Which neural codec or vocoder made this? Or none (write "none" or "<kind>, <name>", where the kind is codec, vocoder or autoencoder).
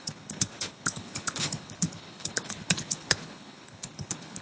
codec, HILCodec